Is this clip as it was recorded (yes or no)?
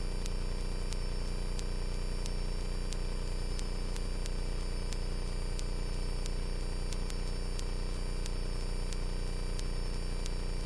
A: yes